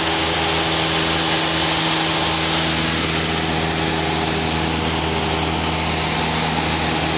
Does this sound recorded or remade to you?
recorded